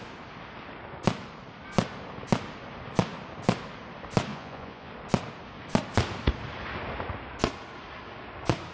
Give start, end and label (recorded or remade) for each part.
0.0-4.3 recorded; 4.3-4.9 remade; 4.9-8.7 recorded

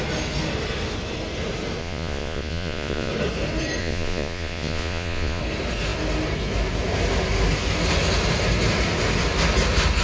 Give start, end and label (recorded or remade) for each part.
0.0-1.8 recorded; 1.8-3.1 remade; 3.1-3.8 recorded; 3.8-5.4 remade; 5.4-10.0 recorded

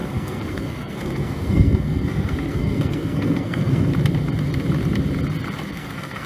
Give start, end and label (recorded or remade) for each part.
0.0-3.9 remade; 3.9-5.7 recorded; 5.7-6.3 remade

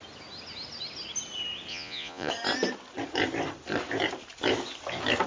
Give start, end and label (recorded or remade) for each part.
0.0-1.7 recorded; 1.7-2.3 remade; 2.3-5.3 recorded

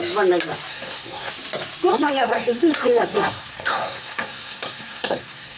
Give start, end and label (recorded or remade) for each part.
0.0-0.7 recorded; 0.7-1.3 remade; 1.3-1.9 recorded; 1.9-5.6 remade

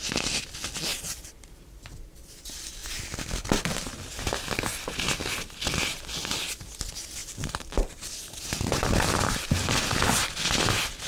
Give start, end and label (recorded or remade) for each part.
0.0-0.9 recorded; 0.9-1.8 remade; 1.8-7.2 recorded; 7.2-9.8 remade; 9.8-11.1 recorded

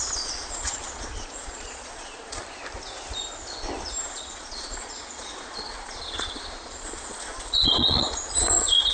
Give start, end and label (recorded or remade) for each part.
0.0-2.4 remade; 2.4-4.1 recorded; 4.1-8.9 remade